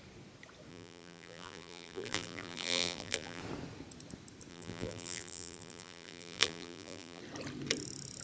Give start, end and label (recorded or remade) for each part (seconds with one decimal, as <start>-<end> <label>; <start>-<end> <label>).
0.0-0.7 recorded; 0.7-3.4 remade; 3.4-4.5 recorded; 4.5-7.2 remade; 7.2-8.2 recorded